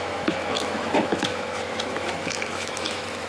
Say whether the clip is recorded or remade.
remade